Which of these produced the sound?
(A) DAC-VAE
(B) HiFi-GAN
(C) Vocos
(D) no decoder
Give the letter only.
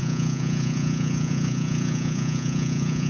C